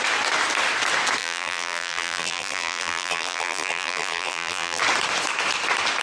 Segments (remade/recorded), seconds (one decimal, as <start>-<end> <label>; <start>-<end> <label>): 0.0-1.2 recorded; 1.2-4.8 remade; 4.8-6.0 recorded